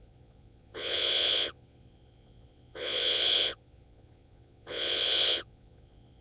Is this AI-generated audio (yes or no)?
yes